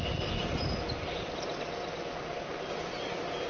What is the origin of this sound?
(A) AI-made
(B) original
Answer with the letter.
B